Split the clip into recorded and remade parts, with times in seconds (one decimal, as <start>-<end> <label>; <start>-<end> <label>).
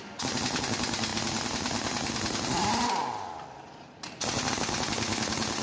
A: 0.0-5.6 recorded